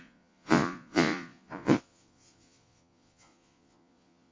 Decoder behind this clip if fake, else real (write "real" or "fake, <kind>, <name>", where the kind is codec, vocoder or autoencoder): fake, vocoder, Vocos